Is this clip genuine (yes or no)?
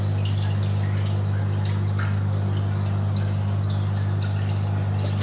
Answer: yes